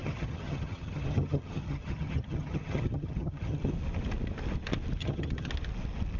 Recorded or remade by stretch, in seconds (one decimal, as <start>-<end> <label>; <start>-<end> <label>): 0.0-3.7 remade; 3.7-5.0 recorded; 5.0-5.5 remade; 5.5-6.2 recorded